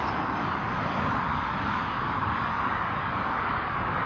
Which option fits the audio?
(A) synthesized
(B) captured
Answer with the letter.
A